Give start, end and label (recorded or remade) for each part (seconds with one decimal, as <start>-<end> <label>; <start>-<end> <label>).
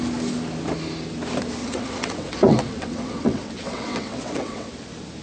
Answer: 0.0-1.6 recorded; 1.6-4.7 remade; 4.7-5.2 recorded